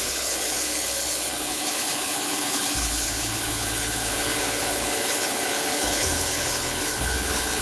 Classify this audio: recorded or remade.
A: remade